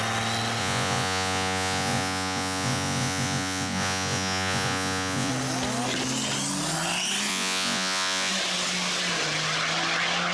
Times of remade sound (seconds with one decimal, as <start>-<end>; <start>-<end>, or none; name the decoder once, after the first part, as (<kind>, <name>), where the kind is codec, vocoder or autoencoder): 0.6-5.3 (vocoder, Vocos); 7.3-8.3